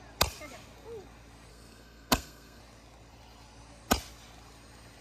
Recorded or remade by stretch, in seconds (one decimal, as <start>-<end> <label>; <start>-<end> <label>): 0.0-1.5 recorded; 1.5-2.6 remade; 2.6-5.0 recorded